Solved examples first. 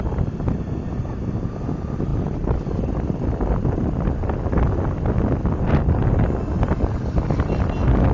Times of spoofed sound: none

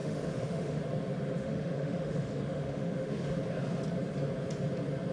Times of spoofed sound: 0.0-0.8 (autoencoder, DAC-VAE); 1.4-3.3

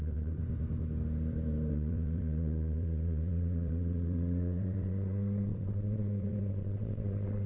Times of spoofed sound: 0.0-0.4 (vocoder, WaveNeXt); 1.7-7.5

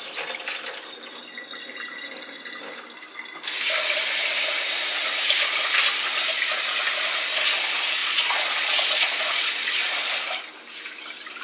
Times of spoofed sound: 8.0-10.1 (vocoder, Vocos)

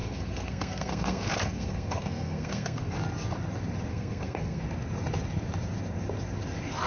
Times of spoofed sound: 0.0-2.9 (codec, SNAC); 3.9-4.6

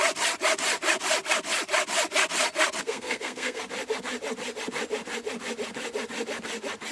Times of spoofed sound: 2.8-3.6 (codec, SNAC)

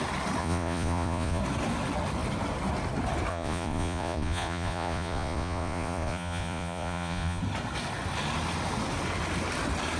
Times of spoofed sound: 0.4-1.4 (vocoder, Vocos); 3.3-7.4

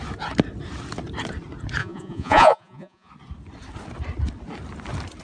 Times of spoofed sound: 1.8-3.1 (vocoder, Vocos)